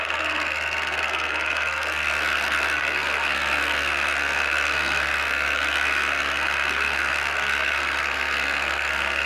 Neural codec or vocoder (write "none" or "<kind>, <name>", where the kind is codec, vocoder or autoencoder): codec, SNAC